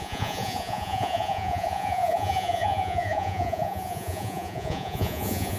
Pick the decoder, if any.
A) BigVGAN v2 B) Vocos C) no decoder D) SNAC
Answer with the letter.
B